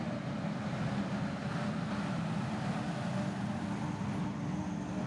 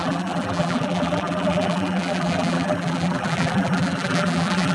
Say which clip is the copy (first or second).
second